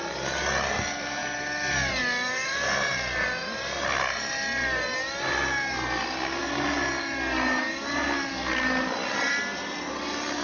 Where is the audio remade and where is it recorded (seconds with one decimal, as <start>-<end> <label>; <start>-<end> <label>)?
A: 0.0-10.4 recorded